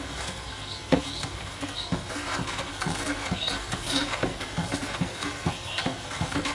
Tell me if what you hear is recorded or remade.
remade